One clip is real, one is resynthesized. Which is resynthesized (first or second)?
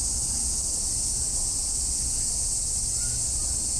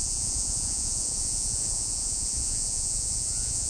second